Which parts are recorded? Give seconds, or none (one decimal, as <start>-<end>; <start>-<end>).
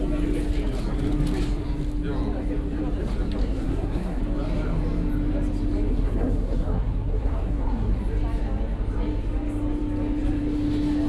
0.0-3.4; 4.2-5.9; 8.0-11.1